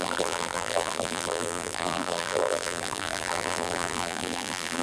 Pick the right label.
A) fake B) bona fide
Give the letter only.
A